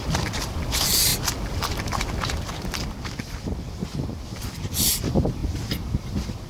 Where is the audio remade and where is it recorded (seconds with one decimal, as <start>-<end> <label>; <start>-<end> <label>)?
0.0-6.5 recorded